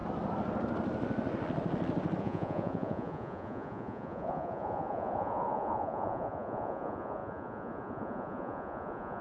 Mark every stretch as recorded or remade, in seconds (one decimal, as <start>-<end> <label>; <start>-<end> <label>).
0.0-2.2 recorded; 2.2-9.2 remade